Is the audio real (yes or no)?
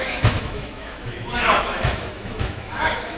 no